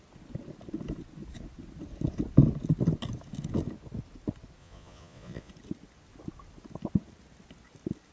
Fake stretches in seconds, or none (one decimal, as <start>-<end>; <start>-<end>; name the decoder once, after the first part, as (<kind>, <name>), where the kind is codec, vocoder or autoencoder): 4.6-5.5 (vocoder, Vocos)